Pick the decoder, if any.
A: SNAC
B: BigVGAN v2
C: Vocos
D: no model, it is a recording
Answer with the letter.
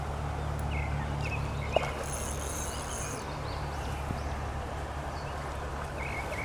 D